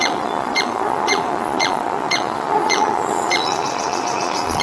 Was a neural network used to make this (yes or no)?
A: yes